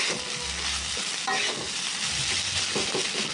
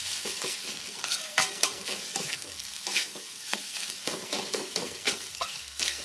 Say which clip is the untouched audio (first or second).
first